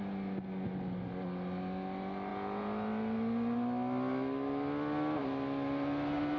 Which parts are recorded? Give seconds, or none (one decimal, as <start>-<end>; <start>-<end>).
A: 0.0-6.4